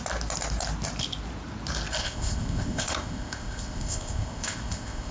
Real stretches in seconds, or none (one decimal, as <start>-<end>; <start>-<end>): 0.0-2.0